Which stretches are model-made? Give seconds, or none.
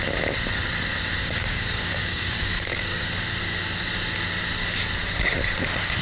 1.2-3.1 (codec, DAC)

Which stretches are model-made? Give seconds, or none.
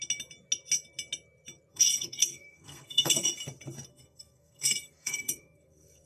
1.7-3.3 (codec, SNAC); 3.9-6.1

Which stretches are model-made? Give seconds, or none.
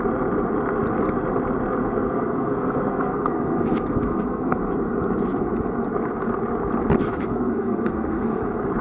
1.8-4.6 (codec, SNAC); 7.0-8.4